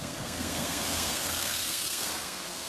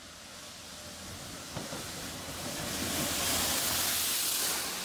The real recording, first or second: second